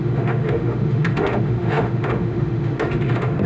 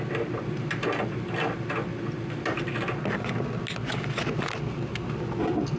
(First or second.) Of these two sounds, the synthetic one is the first